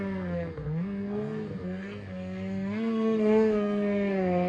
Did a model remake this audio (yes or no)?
yes